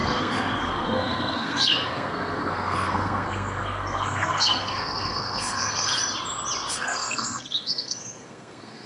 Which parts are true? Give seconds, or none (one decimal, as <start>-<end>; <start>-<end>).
5.9-6.7